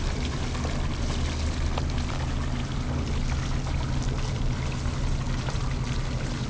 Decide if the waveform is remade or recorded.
recorded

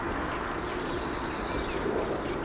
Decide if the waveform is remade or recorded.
recorded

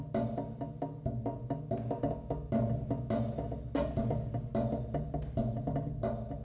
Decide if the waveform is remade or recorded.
recorded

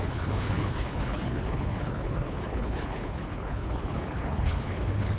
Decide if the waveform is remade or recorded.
remade